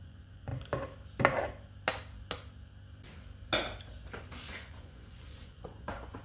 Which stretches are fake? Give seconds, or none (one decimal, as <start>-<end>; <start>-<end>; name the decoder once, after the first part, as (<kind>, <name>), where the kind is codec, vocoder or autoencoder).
0.0-0.5 (vocoder, Vocos); 4.2-6.2